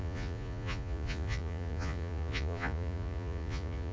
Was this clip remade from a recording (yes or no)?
yes